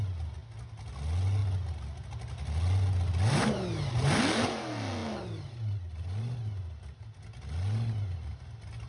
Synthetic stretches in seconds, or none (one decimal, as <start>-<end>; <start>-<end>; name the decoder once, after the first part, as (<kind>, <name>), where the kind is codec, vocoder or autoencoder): none